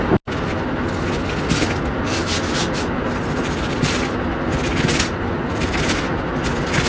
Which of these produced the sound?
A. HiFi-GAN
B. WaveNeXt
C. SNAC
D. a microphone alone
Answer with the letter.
D